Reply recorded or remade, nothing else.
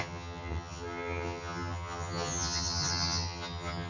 remade